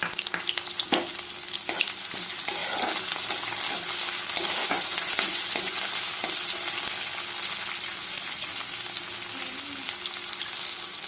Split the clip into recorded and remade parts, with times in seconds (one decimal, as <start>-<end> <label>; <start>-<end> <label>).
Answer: 0.0-4.6 recorded; 4.6-5.8 remade; 5.8-11.1 recorded